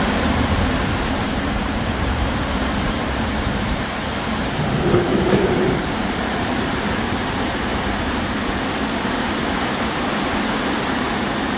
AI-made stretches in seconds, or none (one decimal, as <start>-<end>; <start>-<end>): 0.0-7.7; 10.8-11.6